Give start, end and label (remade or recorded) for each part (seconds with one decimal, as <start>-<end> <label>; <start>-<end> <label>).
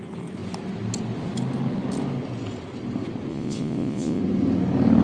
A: 0.0-3.3 recorded; 3.3-4.2 remade; 4.2-5.0 recorded